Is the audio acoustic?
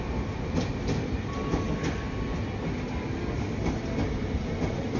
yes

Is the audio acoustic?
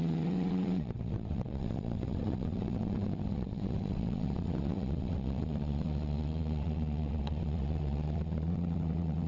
no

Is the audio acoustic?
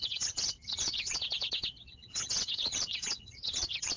no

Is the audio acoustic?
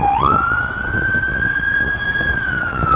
no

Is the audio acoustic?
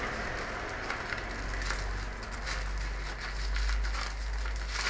yes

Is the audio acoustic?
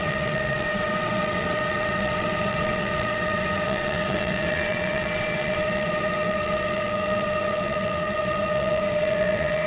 no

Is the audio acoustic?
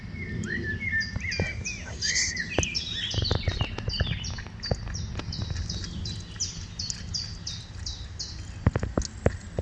yes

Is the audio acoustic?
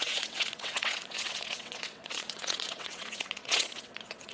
no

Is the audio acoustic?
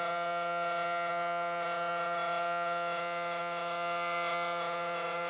no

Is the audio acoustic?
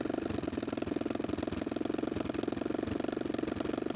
yes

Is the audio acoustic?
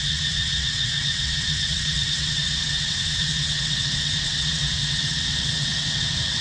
no